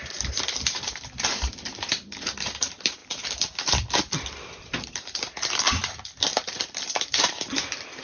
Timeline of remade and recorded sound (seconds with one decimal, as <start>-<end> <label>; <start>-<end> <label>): 0.0-8.0 remade